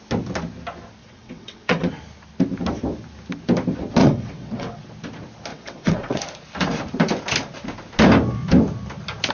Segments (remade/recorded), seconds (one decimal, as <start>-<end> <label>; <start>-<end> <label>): 0.0-1.0 recorded; 1.0-1.9 remade; 1.9-4.0 recorded; 4.0-4.8 remade; 4.8-5.5 recorded; 5.5-6.2 remade; 6.2-9.3 recorded